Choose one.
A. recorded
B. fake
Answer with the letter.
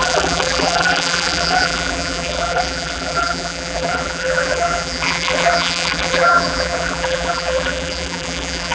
B